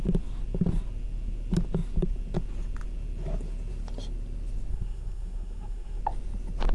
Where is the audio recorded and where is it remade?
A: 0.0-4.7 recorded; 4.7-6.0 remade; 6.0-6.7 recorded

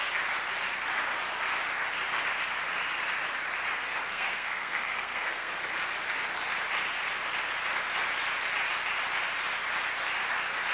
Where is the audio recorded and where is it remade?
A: 0.0-4.1 recorded; 4.1-5.5 remade; 5.5-10.7 recorded

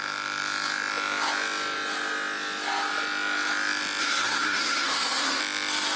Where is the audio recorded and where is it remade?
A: 0.0-4.0 recorded; 4.0-5.4 remade; 5.4-6.0 recorded